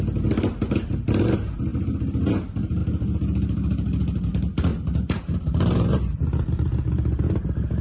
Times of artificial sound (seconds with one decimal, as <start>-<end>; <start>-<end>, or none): 4.7-7.2